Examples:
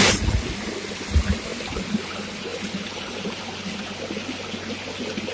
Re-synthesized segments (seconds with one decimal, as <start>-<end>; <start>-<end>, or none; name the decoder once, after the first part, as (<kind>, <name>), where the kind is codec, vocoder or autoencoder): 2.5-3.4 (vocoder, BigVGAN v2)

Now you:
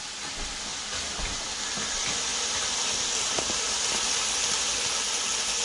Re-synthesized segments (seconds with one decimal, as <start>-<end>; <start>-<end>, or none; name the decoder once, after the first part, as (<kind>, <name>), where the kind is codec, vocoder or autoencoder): 0.7-1.4 (vocoder, BigVGAN v2); 2.3-3.7

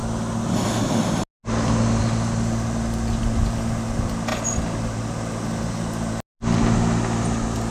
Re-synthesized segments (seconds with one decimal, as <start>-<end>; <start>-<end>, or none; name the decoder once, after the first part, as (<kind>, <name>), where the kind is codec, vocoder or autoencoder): none

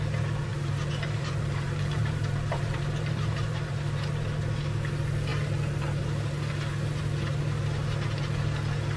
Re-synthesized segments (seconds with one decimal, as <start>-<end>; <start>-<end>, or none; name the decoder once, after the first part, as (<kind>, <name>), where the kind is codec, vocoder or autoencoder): 0.5-3.7 (vocoder, BigVGAN v2)

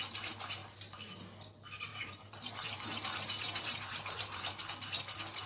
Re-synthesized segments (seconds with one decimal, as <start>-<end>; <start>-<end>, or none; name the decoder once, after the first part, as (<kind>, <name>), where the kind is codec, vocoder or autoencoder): 1.9-4.7 (vocoder, BigVGAN v2)